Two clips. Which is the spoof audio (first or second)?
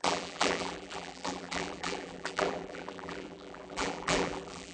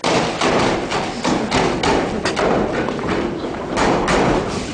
first